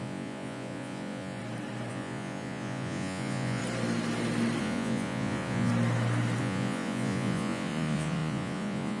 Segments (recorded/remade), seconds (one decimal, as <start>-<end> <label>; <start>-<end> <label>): 0.0-1.4 remade; 1.4-1.9 recorded; 1.9-3.6 remade; 3.6-4.6 recorded; 4.6-5.7 remade; 5.7-6.4 recorded; 6.4-9.0 remade